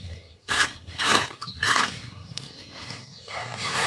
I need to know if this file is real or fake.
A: fake